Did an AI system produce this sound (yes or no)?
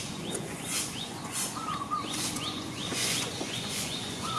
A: yes